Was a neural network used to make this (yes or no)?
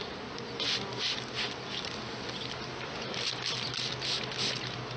no